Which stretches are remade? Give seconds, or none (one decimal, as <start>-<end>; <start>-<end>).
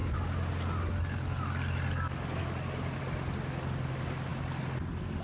none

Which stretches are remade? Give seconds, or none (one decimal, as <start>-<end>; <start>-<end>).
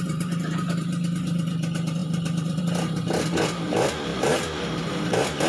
2.0-2.6